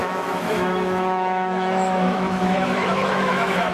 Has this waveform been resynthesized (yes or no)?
yes